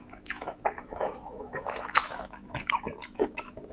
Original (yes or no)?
no